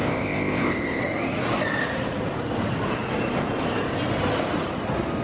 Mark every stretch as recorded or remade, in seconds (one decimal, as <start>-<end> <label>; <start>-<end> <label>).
0.0-1.0 remade; 1.0-5.2 recorded